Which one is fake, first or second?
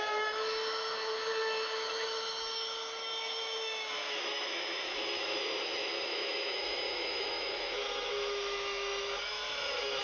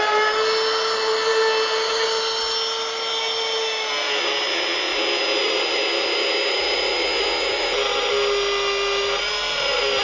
first